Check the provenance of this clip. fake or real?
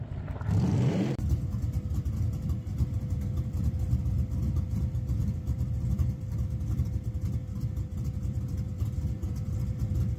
fake